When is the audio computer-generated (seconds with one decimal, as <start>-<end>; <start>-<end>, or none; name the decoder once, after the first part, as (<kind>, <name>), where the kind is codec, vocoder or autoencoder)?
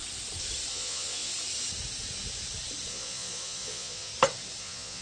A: 0.7-1.3 (vocoder, Vocos); 2.9-4.1; 4.6-5.0